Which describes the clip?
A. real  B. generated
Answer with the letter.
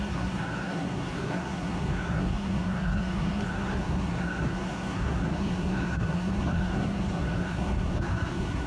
B